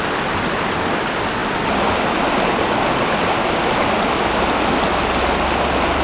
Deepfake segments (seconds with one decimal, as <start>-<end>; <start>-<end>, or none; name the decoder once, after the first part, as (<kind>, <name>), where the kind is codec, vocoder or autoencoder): none

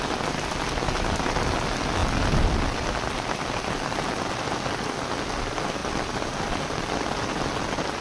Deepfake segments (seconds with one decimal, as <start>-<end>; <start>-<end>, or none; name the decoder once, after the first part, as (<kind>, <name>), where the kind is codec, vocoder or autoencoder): none

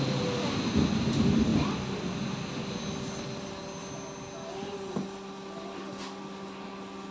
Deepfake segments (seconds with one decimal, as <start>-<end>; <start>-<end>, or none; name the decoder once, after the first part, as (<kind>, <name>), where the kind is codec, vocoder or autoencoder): none

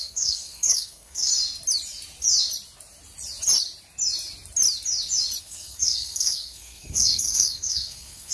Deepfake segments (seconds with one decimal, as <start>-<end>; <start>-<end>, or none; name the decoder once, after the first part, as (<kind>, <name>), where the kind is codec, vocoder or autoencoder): 0.0-1.3 (codec, SNAC); 5.4-8.3

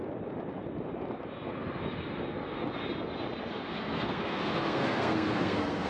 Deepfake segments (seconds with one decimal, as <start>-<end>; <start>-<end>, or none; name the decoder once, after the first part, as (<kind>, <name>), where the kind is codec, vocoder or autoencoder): 3.5-5.9 (codec, SNAC)

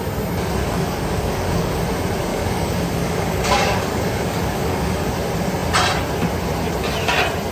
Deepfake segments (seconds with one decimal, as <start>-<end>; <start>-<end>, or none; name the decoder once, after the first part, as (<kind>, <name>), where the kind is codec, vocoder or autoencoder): 0.6-1.8 (codec, DAC); 2.3-5.1

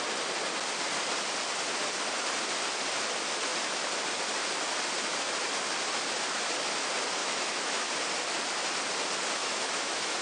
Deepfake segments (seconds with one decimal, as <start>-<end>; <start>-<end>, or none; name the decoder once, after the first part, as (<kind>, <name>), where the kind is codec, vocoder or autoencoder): 7.2-7.9 (autoencoder, DAC-VAE); 9.4-10.2